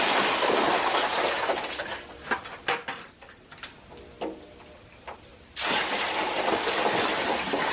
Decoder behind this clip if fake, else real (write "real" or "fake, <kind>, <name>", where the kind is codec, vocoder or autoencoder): real